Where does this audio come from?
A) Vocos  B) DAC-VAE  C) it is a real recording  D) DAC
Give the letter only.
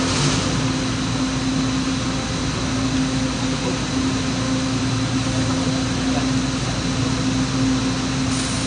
C